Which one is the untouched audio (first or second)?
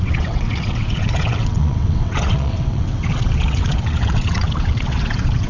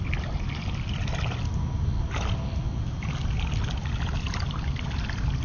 second